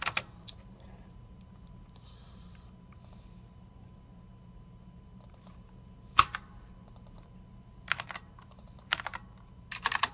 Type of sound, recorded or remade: remade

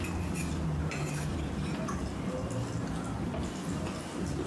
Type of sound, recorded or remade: recorded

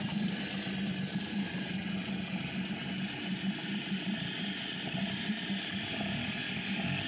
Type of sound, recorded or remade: recorded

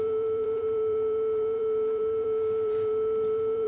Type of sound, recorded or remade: remade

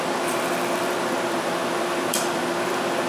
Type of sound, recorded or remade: remade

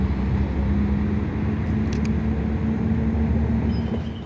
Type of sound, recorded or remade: recorded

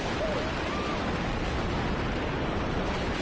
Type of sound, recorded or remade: remade